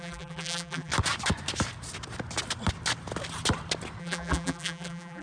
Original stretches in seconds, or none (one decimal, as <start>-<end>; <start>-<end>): 0.9-4.0